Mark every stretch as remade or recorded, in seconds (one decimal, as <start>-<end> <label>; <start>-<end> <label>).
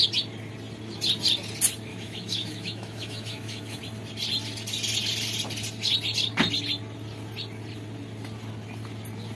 0.0-1.9 recorded; 1.9-3.8 remade; 3.8-9.3 recorded